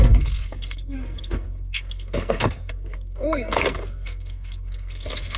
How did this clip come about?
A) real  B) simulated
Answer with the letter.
B